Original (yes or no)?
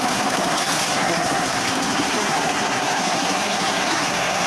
no